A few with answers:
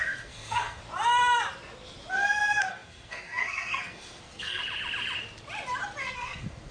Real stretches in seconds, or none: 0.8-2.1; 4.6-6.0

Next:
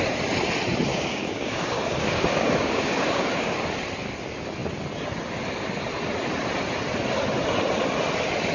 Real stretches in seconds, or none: 0.0-0.9; 3.6-8.5